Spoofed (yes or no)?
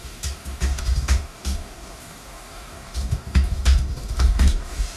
yes